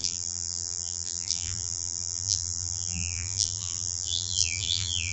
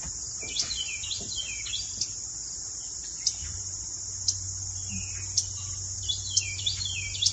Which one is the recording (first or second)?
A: second